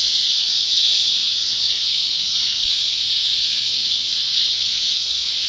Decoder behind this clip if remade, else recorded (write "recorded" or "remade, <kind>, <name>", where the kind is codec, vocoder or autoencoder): remade, codec, SNAC